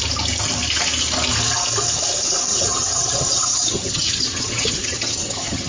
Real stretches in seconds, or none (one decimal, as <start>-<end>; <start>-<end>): 0.0-2.5